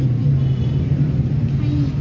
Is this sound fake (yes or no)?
no